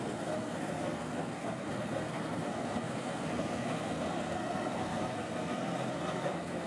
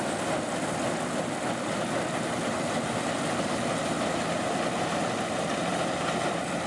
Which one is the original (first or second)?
second